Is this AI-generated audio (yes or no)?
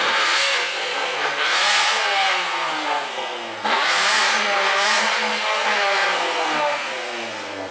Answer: yes